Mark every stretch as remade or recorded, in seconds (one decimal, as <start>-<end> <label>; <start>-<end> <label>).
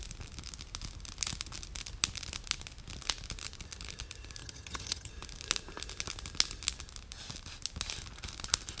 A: 0.0-4.4 recorded; 4.4-5.1 remade; 5.1-8.8 recorded